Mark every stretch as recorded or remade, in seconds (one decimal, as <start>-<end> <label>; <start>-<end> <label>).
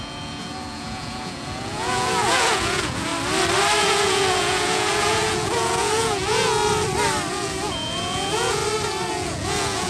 0.0-3.1 remade; 3.1-3.8 recorded; 3.8-6.6 remade; 6.6-7.3 recorded; 7.3-8.6 remade; 8.6-9.1 recorded; 9.1-9.9 remade